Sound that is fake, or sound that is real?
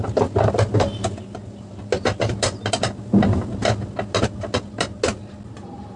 real